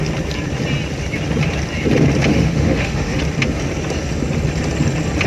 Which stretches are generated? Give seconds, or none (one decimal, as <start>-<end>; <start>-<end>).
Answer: 2.3-3.2